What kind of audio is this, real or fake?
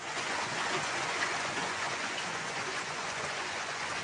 fake